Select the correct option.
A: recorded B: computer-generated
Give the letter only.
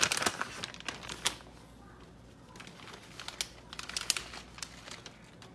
A